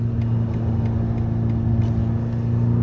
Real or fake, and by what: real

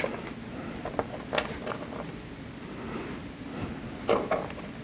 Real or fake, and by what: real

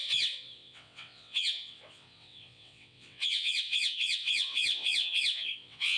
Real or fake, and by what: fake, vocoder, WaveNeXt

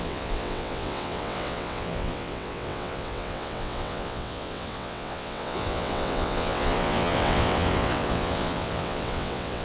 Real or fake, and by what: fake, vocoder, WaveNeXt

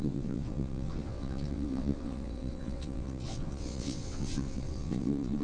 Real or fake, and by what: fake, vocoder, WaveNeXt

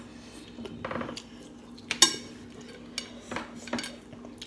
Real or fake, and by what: real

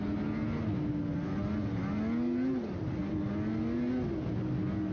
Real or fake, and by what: real